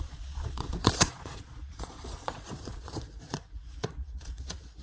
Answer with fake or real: fake